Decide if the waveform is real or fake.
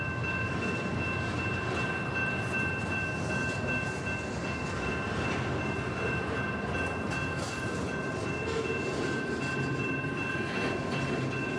real